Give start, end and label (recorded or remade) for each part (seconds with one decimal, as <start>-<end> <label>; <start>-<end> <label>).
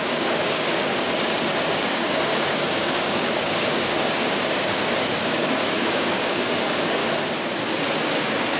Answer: 0.0-7.0 remade; 7.0-8.1 recorded; 8.1-8.6 remade